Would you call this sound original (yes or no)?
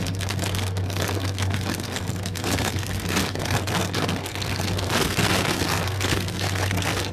no